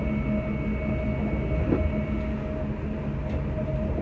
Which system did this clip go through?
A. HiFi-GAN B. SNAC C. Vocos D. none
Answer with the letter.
D